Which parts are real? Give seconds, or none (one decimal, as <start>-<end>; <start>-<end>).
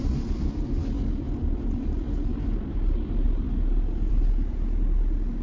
0.0-5.4